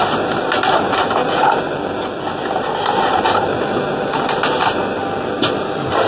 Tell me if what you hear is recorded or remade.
recorded